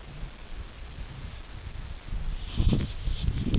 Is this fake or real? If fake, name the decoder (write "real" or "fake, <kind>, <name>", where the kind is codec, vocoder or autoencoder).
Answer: real